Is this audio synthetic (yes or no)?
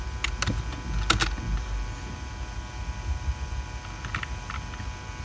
no